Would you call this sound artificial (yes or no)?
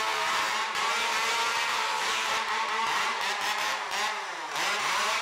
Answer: yes